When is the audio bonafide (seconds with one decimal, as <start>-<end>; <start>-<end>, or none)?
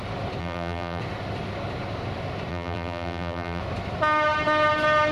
0.0-0.4; 1.0-2.5; 3.6-5.1